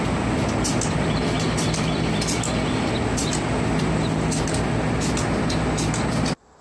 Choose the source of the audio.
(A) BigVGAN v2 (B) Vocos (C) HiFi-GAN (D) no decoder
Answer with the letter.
D